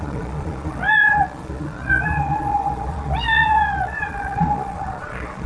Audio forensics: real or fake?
fake